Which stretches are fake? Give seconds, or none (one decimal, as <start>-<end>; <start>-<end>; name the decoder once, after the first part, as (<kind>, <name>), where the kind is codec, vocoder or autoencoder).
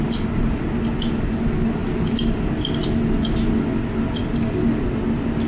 none